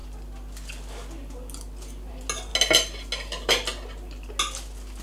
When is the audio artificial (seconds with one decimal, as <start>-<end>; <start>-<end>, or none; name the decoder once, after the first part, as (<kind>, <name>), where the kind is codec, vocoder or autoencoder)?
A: none